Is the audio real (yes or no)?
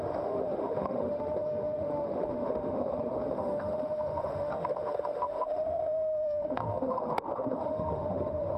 no